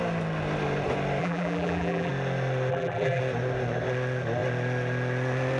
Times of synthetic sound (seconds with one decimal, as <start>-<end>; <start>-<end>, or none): 1.2-2.1; 2.7-3.2